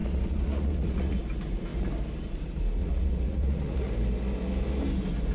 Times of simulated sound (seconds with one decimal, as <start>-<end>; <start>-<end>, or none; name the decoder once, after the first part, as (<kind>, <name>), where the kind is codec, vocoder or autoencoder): 0.0-1.2 (vocoder, Vocos); 2.8-3.9

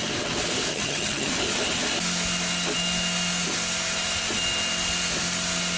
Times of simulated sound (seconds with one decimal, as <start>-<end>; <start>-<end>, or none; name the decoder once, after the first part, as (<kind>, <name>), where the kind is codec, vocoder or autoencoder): 0.7-1.3 (vocoder, HiFi-GAN)

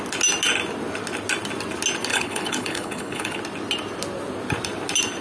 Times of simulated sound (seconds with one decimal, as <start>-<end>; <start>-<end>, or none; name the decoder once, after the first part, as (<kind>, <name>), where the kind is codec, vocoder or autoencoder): 2.1-3.4 (codec, HILCodec)